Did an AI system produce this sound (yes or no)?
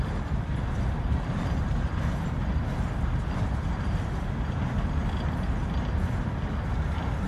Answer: no